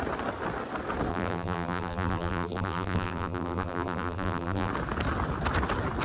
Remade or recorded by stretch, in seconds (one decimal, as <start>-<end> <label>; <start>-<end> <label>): 0.0-1.1 recorded; 1.1-4.7 remade; 4.7-6.0 recorded